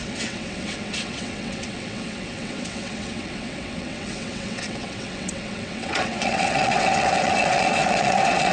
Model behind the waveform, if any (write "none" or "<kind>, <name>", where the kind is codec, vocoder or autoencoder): vocoder, WaveNeXt